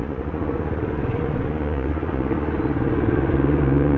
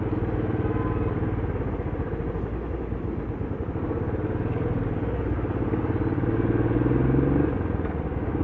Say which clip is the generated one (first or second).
first